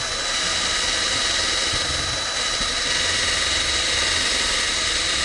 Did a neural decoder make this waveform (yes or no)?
no